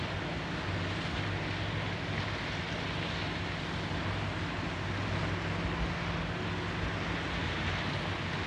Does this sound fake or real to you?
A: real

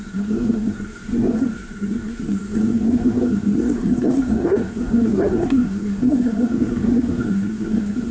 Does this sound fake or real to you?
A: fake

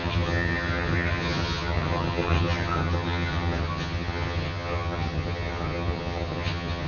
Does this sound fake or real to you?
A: fake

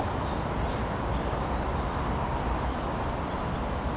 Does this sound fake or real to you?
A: real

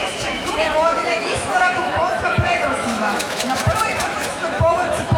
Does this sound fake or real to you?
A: fake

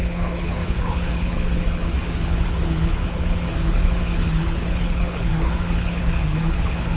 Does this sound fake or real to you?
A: fake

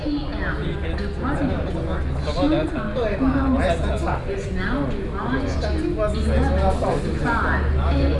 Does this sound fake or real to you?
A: real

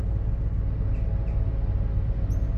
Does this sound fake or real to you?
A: real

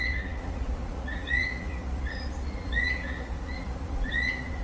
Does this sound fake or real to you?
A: fake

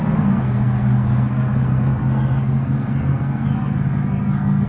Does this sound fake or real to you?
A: fake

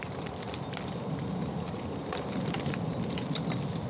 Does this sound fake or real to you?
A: real